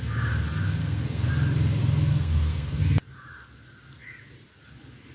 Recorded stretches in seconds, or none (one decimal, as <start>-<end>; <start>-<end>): 0.0-0.8; 1.3-2.1; 2.8-5.1